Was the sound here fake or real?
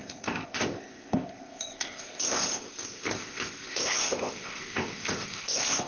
fake